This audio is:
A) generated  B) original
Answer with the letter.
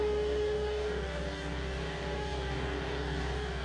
A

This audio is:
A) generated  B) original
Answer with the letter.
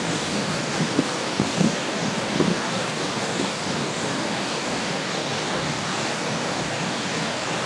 A